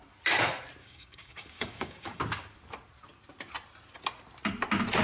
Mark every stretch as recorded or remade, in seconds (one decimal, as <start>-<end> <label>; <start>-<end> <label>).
0.0-0.8 recorded; 0.8-2.2 remade; 2.2-5.0 recorded